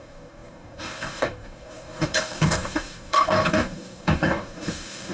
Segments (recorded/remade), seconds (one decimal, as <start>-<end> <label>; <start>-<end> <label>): 0.0-5.1 remade